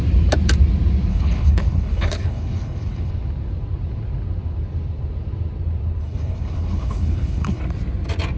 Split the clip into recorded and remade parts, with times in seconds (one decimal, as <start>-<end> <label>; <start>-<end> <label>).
0.0-1.1 recorded; 1.1-3.1 remade; 3.1-6.0 recorded; 6.0-7.6 remade; 7.6-8.4 recorded